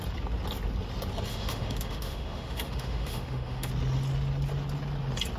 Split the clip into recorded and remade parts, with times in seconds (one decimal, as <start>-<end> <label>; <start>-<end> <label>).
0.0-1.3 recorded; 1.3-3.7 remade; 3.7-5.4 recorded